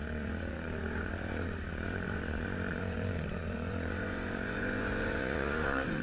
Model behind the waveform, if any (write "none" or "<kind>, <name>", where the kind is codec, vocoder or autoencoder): vocoder, Vocos